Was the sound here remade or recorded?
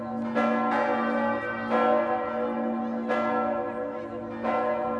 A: recorded